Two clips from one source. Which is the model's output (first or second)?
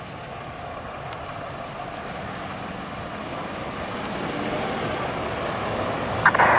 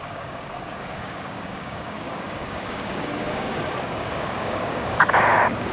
second